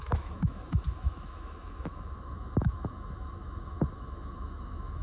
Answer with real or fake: fake